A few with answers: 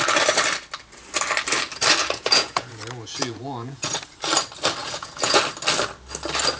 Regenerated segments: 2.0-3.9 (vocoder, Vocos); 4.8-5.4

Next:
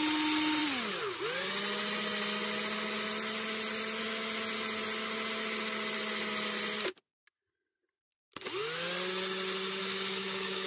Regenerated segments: 9.8-10.7 (codec, DAC)

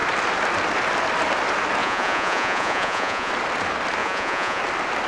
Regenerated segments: 1.8-3.3 (vocoder, Vocos); 4.0-4.6

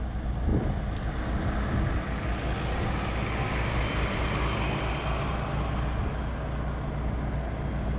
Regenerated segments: none

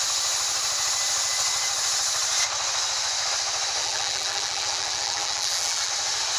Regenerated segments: 3.8-5.9 (vocoder, BigVGAN v2)